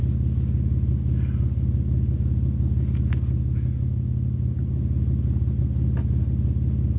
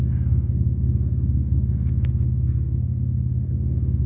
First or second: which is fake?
second